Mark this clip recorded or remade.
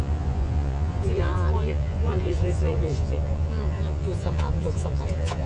remade